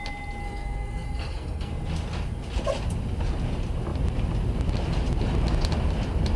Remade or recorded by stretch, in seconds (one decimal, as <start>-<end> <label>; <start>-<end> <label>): 0.0-0.4 recorded; 0.4-1.7 remade; 1.7-6.4 recorded